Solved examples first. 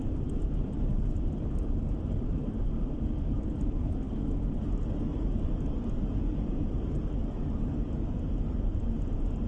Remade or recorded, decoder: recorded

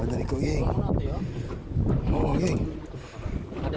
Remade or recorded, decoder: recorded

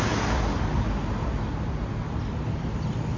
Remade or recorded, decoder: recorded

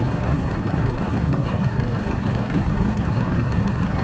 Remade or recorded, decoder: remade, codec, SNAC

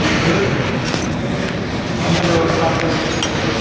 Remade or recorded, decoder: recorded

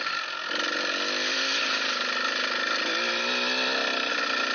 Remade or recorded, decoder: recorded